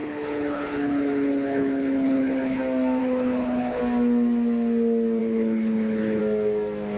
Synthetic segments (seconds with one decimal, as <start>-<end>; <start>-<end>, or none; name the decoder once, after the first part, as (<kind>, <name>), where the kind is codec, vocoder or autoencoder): 0.0-2.6 (codec, HILCodec); 3.0-3.8; 5.2-6.2